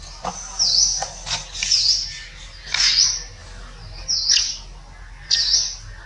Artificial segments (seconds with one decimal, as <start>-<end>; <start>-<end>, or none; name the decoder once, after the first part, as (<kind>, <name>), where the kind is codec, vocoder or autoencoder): none